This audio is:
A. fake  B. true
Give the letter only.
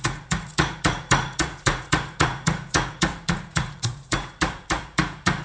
A